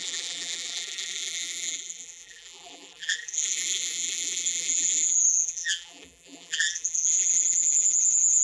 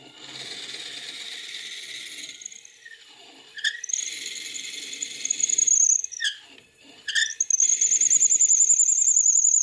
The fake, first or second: first